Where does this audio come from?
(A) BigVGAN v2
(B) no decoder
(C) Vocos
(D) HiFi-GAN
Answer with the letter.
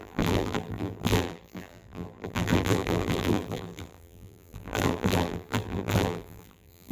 A